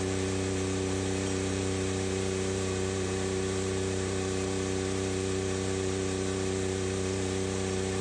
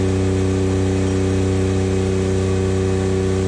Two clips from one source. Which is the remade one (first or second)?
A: first